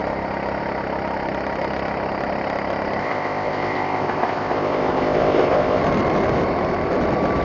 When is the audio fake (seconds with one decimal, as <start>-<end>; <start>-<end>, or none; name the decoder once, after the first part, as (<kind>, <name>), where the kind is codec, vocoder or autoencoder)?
3.0-5.8 (codec, ZipCodec)